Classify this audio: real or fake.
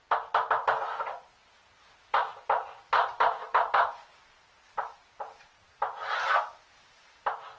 real